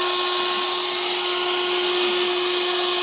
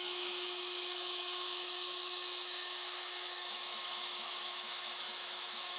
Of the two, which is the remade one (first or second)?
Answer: second